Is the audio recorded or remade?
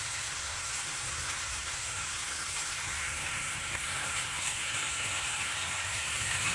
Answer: remade